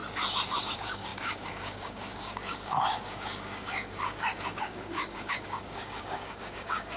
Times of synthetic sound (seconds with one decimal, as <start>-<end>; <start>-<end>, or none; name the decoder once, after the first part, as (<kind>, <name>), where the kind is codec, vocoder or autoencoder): 0.6-7.0 (codec, DAC)